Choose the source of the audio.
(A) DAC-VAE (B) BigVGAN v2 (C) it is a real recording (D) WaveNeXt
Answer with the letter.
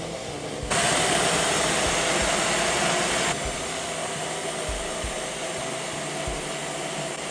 C